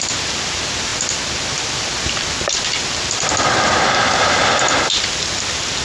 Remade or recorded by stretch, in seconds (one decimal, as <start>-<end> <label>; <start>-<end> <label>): 0.0-0.9 remade; 0.9-4.4 recorded; 4.4-5.8 remade